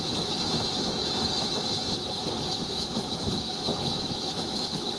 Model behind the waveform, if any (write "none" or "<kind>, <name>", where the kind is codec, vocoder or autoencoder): autoencoder, DAC-VAE